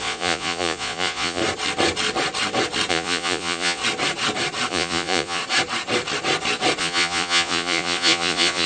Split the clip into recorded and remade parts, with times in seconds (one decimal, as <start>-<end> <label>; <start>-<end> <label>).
0.0-1.4 remade; 1.4-2.9 recorded; 2.9-3.8 remade; 3.8-4.7 recorded; 4.7-5.4 remade; 5.4-6.8 recorded; 6.8-8.7 remade